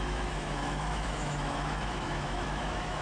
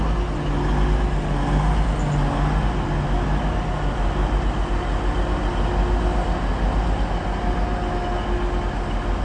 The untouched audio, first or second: second